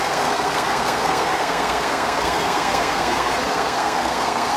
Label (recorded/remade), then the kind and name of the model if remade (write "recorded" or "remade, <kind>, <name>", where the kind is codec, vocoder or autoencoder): remade, codec, SNAC